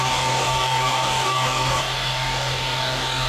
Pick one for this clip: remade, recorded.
remade